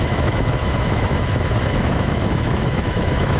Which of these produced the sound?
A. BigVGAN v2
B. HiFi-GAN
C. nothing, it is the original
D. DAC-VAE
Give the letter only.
D